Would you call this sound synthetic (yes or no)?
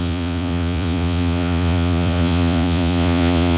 yes